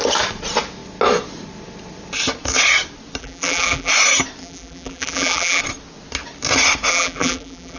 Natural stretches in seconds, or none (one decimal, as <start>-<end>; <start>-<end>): 0.0-3.2; 3.9-4.4; 5.6-6.9